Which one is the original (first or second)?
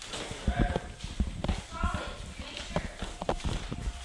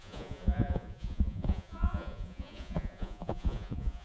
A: first